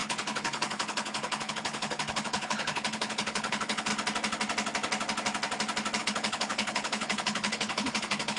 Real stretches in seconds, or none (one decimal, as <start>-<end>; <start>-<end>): 3.9-6.0